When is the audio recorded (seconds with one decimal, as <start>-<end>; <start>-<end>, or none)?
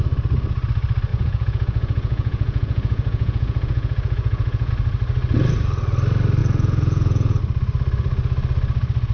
0.0-1.1; 4.7-6.4; 7.4-9.1